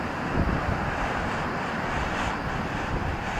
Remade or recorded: remade